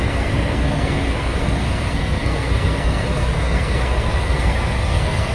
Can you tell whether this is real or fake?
fake